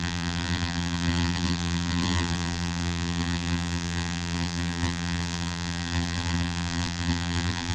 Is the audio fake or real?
fake